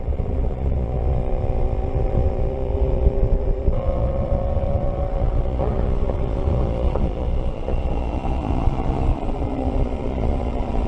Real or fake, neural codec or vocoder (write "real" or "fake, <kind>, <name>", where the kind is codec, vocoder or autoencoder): fake, vocoder, Vocos